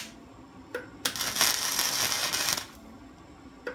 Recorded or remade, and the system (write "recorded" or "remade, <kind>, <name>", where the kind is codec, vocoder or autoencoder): recorded